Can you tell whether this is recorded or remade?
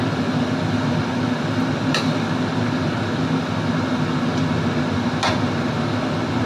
recorded